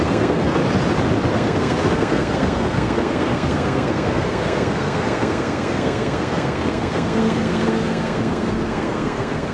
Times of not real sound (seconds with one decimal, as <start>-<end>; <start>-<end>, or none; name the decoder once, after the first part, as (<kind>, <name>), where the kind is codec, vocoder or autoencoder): 0.0-0.6 (codec, SNAC); 1.3-9.5